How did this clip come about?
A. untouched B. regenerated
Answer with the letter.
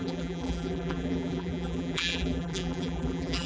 B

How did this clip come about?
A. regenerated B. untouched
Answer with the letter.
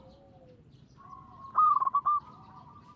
B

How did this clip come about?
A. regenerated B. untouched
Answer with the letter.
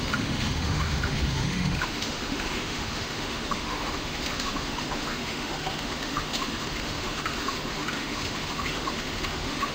A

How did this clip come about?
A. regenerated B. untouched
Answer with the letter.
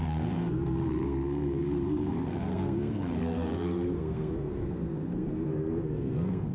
A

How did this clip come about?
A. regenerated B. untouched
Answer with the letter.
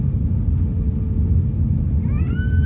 B